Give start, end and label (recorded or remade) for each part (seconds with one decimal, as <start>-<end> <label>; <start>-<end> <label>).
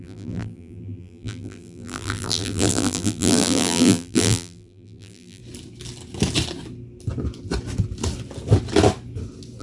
0.0-5.4 remade; 5.4-9.6 recorded